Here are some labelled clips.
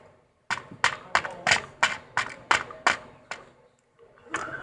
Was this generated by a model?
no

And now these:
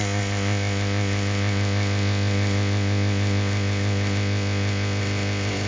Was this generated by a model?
yes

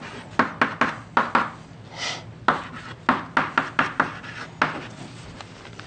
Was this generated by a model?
no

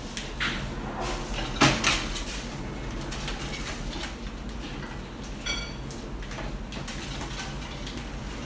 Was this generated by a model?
no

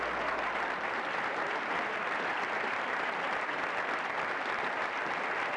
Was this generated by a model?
no